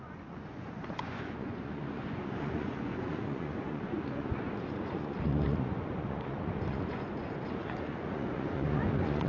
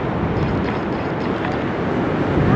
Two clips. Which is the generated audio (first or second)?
first